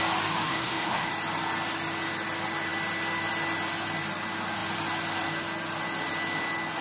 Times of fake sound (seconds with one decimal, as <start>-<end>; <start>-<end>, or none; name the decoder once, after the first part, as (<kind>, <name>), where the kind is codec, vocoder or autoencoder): 0.4-1.1 (autoencoder, DAC-VAE)